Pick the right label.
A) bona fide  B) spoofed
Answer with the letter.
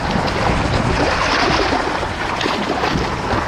A